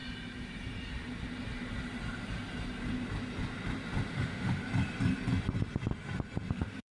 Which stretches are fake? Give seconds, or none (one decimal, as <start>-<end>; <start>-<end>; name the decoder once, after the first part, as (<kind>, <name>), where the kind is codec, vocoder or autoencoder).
4.1-4.6 (autoencoder, DAC-VAE); 6.5-6.9

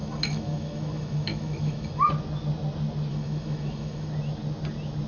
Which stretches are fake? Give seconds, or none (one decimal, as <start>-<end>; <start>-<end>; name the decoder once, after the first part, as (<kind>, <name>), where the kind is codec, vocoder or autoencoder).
0.0-2.1 (autoencoder, DAC-VAE); 3.1-4.1